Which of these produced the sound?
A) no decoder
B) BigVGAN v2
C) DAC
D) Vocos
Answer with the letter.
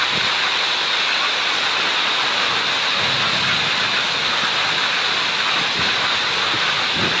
A